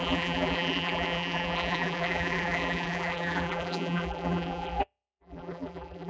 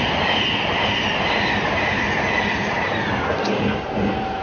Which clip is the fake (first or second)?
first